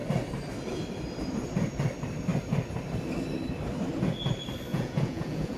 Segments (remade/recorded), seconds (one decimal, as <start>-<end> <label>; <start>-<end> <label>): 0.0-4.7 recorded; 4.7-5.6 remade